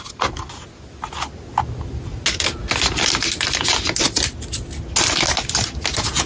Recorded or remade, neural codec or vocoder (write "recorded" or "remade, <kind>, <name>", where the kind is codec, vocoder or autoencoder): recorded